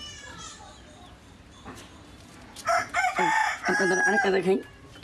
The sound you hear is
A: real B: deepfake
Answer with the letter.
A